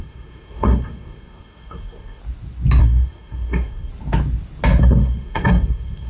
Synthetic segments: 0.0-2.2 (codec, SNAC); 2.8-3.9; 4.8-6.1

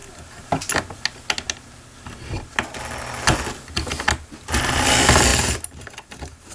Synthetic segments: none

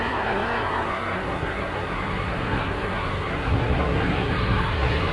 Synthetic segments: 0.0-5.1 (codec, SNAC)

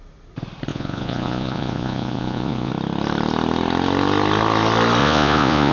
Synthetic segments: 0.7-2.7 (vocoder, Vocos); 5.0-5.7

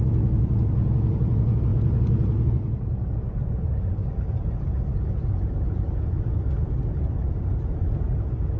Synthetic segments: 0.0-8.6 (vocoder, Vocos)